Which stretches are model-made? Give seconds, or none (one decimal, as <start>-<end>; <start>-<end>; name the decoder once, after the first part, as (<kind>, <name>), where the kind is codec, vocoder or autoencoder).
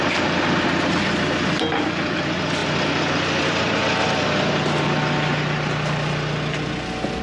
none